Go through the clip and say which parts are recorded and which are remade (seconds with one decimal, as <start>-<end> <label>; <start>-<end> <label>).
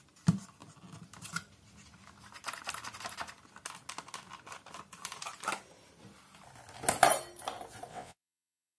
0.0-7.9 recorded; 7.9-8.8 remade